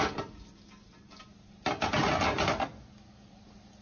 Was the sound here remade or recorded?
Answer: recorded